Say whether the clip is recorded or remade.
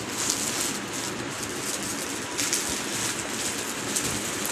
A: recorded